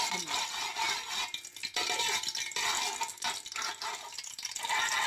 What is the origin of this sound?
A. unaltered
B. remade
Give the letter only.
A